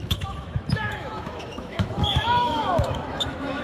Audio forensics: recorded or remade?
remade